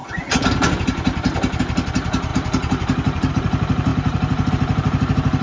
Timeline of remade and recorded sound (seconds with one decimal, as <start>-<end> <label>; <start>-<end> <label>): 0.0-1.6 recorded; 1.6-5.4 remade